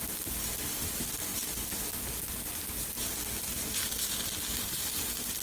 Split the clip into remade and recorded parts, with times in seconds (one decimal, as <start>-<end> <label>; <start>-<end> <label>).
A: 0.0-5.4 recorded